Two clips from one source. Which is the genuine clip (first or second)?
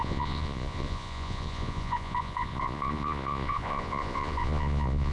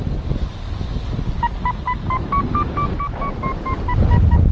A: second